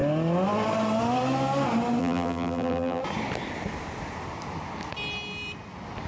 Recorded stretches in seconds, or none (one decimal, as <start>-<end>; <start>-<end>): 0.0-2.0; 3.0-6.1